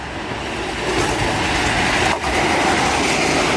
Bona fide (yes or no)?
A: yes